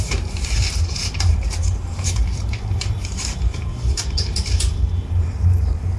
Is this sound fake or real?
fake